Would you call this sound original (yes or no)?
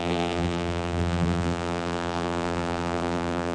no